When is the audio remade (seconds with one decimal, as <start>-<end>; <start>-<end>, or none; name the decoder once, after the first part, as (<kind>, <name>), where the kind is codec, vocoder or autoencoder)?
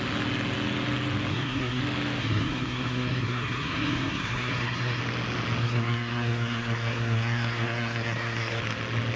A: 1.3-1.8 (codec, SNAC); 2.2-5.0; 5.6-8.6